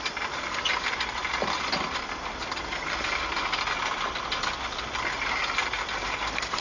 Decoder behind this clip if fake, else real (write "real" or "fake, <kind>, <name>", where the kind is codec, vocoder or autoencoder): real